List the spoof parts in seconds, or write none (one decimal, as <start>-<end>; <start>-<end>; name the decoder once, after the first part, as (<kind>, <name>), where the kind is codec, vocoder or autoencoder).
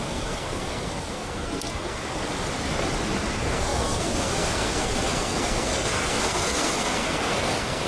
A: 0.0-2.2 (codec, SNAC); 3.3-7.9